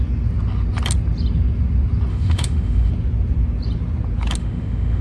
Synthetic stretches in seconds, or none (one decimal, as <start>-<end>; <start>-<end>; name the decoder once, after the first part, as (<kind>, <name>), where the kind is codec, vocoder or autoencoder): 2.1-2.9 (autoencoder, DAC-VAE); 4.4-5.0